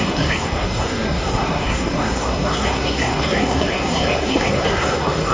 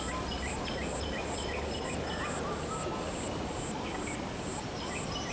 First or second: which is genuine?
second